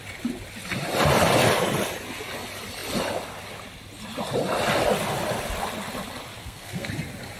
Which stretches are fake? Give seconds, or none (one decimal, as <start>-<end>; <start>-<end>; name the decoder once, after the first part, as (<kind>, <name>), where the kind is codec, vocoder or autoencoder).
6.4-6.9 (codec, SNAC)